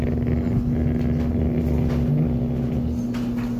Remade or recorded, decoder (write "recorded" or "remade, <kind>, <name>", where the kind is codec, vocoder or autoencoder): recorded